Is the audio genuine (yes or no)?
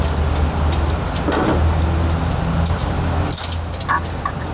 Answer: yes